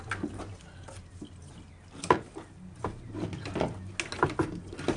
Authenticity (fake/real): real